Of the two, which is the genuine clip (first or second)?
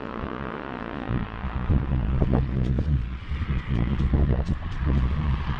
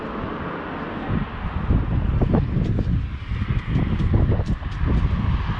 second